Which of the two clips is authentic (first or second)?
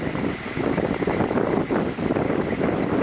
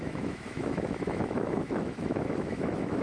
first